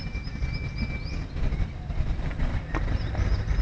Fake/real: real